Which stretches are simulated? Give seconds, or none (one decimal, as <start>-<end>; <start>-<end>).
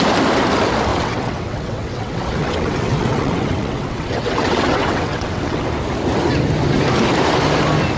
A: 0.9-5.7